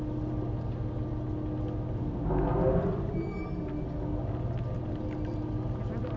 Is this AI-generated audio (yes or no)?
no